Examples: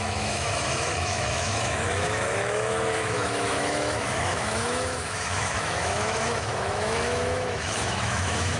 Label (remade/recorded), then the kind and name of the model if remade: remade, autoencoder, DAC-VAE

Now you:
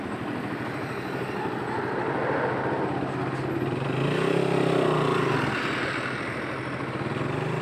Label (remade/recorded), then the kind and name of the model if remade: recorded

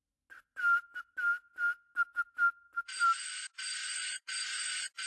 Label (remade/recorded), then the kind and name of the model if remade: recorded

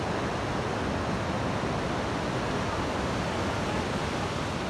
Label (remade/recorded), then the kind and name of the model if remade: recorded